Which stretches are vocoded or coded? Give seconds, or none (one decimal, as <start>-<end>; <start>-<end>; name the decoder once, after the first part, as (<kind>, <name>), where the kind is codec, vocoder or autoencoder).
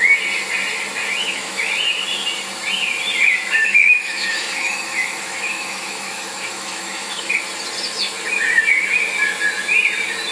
1.2-1.7 (autoencoder, DAC-VAE); 3.6-7.3